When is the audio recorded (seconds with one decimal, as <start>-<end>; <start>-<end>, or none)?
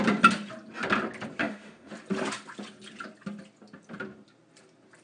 0.0-1.4; 1.9-5.0